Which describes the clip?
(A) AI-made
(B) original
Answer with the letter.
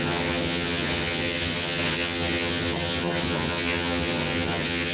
A